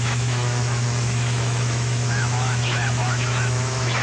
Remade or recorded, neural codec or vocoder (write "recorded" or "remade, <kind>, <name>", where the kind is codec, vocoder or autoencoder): remade, autoencoder, DAC-VAE